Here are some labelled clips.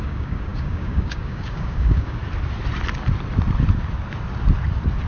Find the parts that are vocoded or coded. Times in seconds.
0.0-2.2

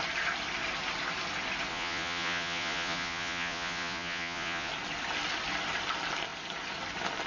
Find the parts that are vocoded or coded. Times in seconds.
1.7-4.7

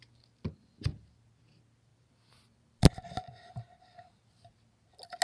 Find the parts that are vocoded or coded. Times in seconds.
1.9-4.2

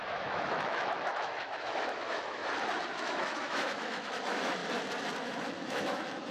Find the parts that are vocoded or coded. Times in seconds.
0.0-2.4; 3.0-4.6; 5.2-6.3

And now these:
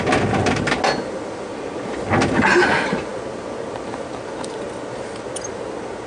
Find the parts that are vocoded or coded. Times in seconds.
none

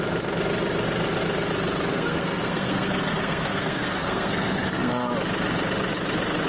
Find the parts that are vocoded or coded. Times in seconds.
1.9-5.1

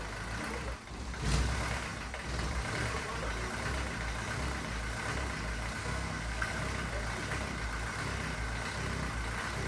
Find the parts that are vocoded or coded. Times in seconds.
5.8-6.5

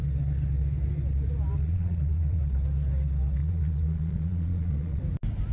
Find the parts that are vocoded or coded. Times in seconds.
1.6-2.4; 3.4-5.0